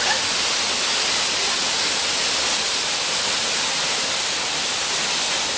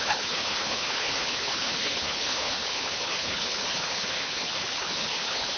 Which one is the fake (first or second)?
second